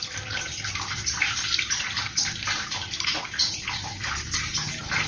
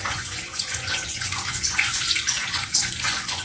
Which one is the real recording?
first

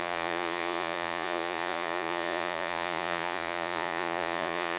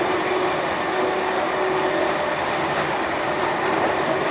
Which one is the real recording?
second